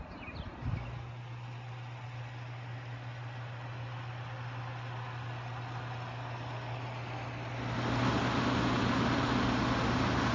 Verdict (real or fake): real